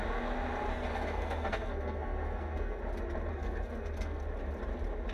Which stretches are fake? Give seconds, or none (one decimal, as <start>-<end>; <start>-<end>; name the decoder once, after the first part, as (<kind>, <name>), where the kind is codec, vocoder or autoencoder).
0.7-2.8 (codec, SNAC); 3.3-4.2